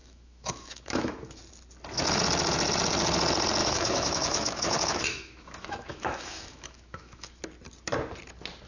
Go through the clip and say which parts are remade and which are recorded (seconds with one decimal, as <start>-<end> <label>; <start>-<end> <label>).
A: 0.0-1.4 remade; 1.4-3.6 recorded; 3.6-7.4 remade; 7.4-8.7 recorded